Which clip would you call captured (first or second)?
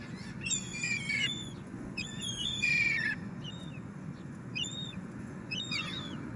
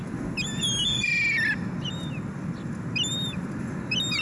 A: second